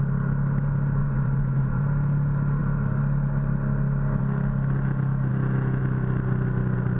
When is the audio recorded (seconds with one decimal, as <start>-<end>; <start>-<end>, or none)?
0.0-1.0; 1.8-7.0

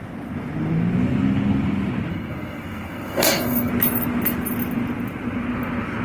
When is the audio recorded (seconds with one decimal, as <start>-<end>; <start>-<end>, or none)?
0.0-2.1; 3.7-6.0

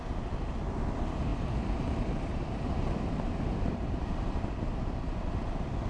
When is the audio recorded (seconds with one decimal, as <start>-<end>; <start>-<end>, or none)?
0.0-1.3; 4.8-5.9

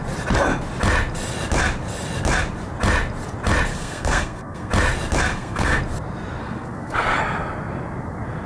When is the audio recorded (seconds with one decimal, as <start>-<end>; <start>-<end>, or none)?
0.0-3.7; 4.7-5.3; 5.8-6.4; 7.2-8.5

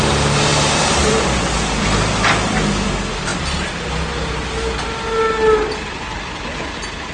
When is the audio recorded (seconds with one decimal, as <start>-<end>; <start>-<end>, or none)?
0.0-0.5; 1.4-7.1

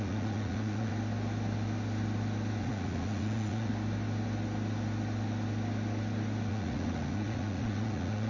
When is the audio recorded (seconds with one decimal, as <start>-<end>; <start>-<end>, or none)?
0.9-2.6; 3.7-6.5

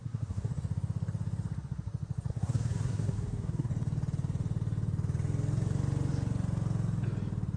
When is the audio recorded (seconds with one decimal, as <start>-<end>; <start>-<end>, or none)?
0.5-2.3; 3.7-7.6

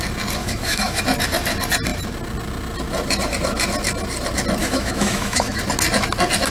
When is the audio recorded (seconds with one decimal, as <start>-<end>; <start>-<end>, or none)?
0.0-0.4; 1.0-4.6; 5.6-6.5